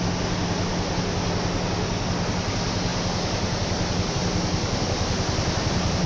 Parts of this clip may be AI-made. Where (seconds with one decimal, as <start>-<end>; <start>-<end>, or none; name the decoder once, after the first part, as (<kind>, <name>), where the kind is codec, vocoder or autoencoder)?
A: none